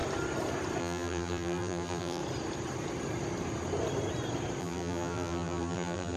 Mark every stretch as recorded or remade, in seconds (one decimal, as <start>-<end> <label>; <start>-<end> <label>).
0.0-0.8 recorded; 0.8-2.2 remade; 2.2-4.6 recorded; 4.6-6.2 remade